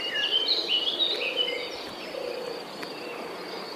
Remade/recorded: recorded